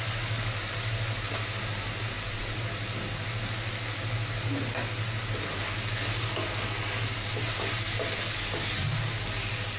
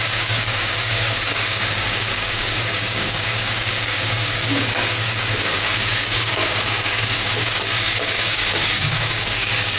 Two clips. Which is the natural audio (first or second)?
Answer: first